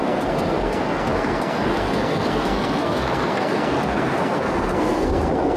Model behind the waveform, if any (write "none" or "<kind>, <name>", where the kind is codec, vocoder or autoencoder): codec, SNAC